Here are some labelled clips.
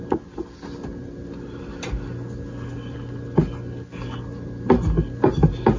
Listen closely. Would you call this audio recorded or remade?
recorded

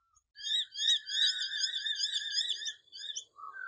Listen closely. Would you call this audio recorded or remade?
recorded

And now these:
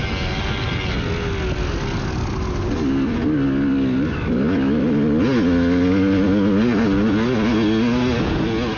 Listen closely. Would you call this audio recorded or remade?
recorded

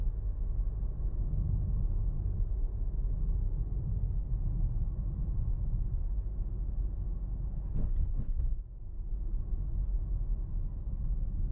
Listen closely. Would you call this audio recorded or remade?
recorded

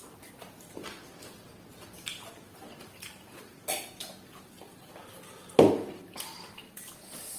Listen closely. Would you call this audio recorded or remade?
recorded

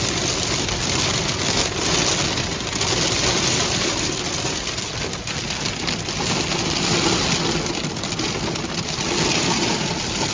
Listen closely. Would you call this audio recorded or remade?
recorded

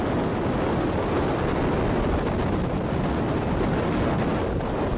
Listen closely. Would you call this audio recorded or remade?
recorded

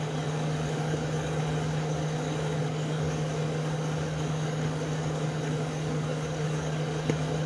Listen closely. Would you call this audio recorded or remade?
remade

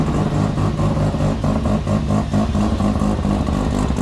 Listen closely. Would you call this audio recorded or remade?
recorded